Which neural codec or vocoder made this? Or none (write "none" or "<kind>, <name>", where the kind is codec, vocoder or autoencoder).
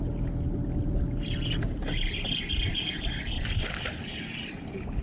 none